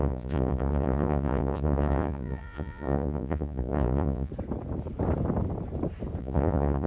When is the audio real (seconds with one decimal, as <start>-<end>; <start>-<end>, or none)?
4.3-6.2